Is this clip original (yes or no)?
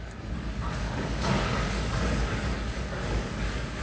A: no